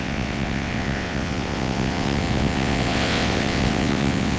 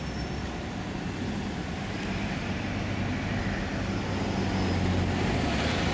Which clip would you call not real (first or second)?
first